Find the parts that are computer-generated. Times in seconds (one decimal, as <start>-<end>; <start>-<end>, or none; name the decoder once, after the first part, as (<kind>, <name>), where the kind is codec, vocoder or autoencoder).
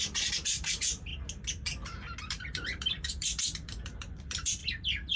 0.0-1.1 (vocoder, BigVGAN v2); 2.2-4.6